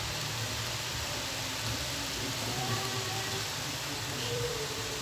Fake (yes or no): yes